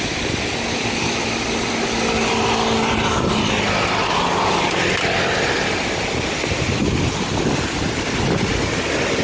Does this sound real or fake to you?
real